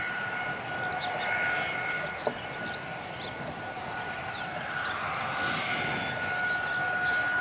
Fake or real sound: real